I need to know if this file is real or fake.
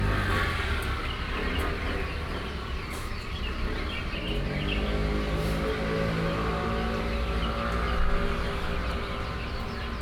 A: real